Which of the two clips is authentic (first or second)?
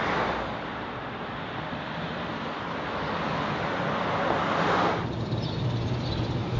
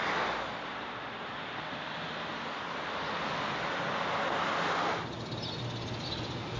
second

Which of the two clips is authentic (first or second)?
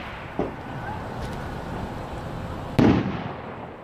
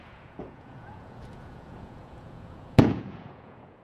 first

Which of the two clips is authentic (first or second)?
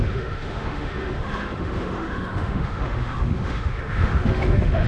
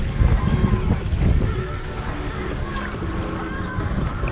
second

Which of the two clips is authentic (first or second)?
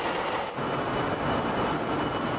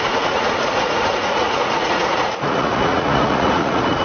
first